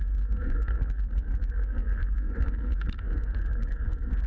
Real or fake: fake